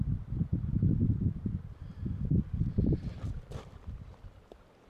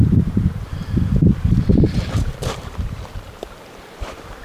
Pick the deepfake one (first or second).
second